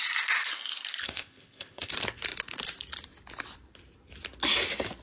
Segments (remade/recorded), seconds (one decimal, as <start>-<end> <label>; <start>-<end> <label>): 0.0-1.0 recorded; 1.0-1.9 remade; 1.9-5.0 recorded